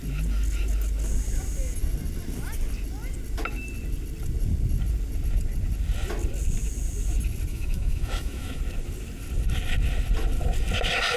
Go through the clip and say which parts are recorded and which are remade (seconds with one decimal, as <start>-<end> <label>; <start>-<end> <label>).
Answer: 0.0-7.5 recorded; 7.5-8.6 remade; 8.6-11.2 recorded